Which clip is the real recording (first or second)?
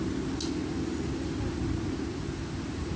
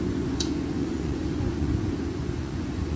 first